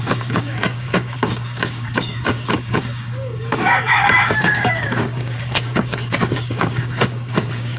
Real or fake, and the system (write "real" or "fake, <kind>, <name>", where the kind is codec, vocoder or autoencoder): fake, codec, DAC